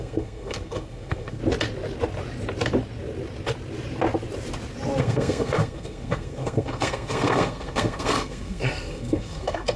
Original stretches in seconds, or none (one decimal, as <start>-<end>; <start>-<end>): 1.4-5.0

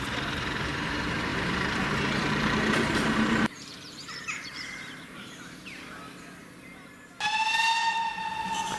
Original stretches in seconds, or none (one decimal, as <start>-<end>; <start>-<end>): 0.0-1.3; 6.0-8.8

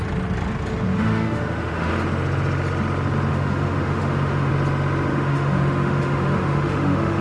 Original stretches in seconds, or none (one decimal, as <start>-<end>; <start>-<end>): 0.0-0.9; 1.9-3.3; 4.5-5.1

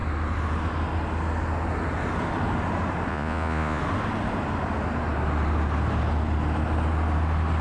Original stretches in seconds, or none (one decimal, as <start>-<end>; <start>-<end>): 0.0-3.1; 3.8-7.6

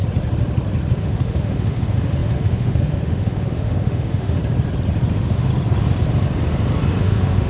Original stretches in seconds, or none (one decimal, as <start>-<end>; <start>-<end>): 0.0-1.0; 4.4-5.1; 5.5-7.0

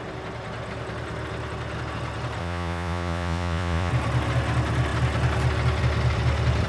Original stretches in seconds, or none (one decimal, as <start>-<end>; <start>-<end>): 0.0-2.4; 3.9-6.7

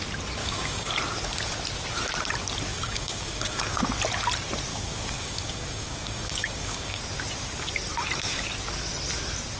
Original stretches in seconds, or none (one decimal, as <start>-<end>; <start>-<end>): 0.0-0.4; 0.9-2.7; 3.8-4.7; 7.0-9.6